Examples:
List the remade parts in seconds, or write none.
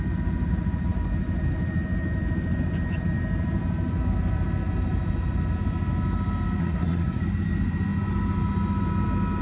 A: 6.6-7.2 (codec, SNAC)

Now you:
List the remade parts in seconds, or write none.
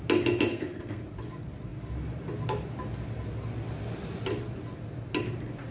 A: 0.5-1.0 (codec, SNAC)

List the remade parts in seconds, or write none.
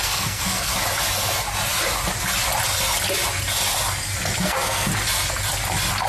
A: 0.0-0.7 (codec, SNAC); 4.4-4.9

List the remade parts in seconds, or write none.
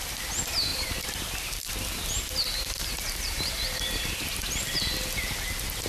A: 0.7-4.2 (vocoder, BigVGAN v2)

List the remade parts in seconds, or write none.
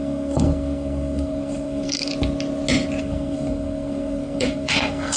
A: 0.0-2.1 (codec, SNAC); 3.0-5.2